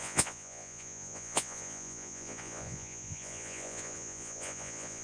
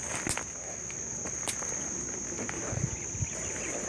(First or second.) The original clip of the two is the second